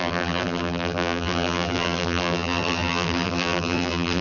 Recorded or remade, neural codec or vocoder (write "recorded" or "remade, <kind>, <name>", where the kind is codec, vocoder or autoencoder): remade, vocoder, BigVGAN v2